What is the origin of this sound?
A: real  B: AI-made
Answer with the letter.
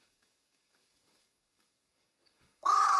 B